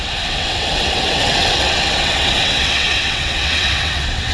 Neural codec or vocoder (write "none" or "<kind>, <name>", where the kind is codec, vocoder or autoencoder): vocoder, WaveNeXt